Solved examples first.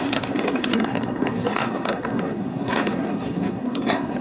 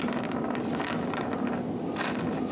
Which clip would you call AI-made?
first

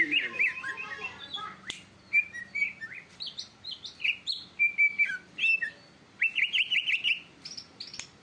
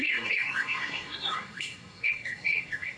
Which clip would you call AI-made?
second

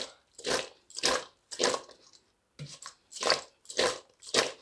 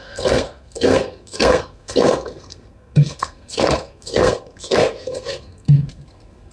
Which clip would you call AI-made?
second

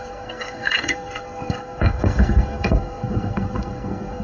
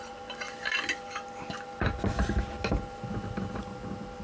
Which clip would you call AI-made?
first